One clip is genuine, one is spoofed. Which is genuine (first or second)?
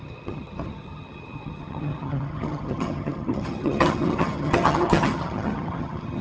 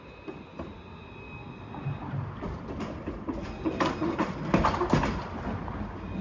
second